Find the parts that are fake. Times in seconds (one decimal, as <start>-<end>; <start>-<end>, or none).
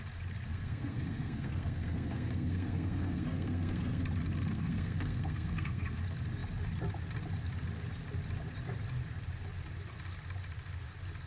0.5-4.0; 4.5-6.0